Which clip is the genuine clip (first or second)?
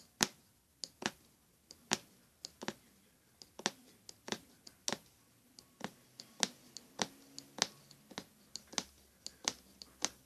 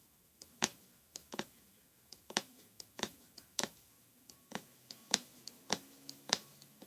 first